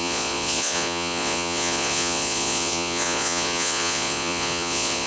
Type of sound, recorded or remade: remade